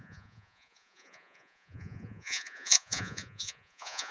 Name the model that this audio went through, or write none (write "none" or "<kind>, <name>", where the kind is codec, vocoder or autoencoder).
vocoder, Vocos